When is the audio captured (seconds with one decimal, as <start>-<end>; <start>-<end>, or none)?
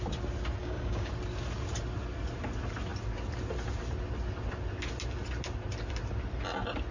0.0-0.6; 1.1-6.9